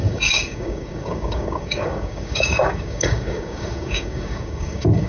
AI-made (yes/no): yes